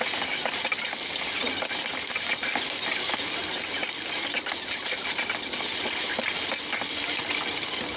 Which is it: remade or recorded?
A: recorded